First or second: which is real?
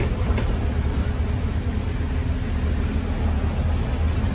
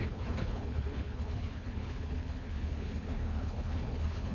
first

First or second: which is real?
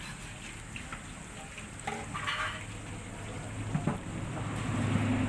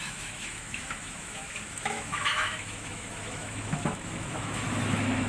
first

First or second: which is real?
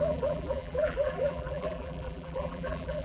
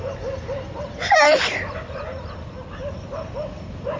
second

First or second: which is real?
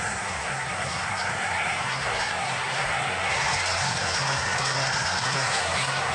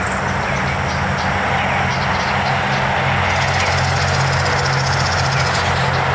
second